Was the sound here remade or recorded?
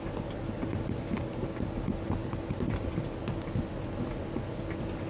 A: recorded